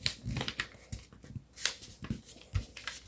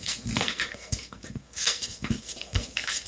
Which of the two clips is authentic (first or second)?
first